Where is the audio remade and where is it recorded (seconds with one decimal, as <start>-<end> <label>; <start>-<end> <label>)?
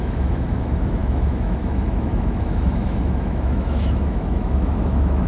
0.0-5.3 remade